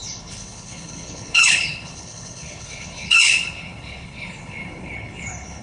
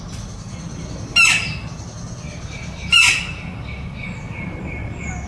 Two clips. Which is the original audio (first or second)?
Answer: second